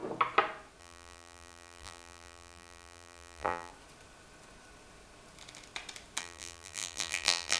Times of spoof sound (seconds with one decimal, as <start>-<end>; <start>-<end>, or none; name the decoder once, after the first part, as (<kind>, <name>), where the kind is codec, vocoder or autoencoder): 0.8-3.7 (vocoder, BigVGAN v2); 6.2-7.6